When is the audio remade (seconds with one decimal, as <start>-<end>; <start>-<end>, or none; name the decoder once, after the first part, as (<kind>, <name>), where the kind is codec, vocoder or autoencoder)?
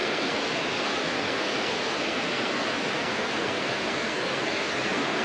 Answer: 0.0-5.2 (codec, SNAC)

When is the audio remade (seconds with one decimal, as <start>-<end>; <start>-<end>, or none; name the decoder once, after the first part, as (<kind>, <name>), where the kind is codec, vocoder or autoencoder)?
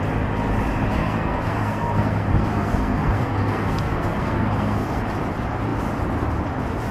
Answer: 0.9-5.0 (codec, SNAC)